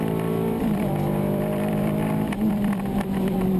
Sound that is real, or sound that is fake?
fake